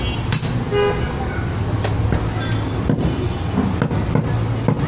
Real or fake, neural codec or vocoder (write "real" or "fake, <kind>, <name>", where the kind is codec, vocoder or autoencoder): real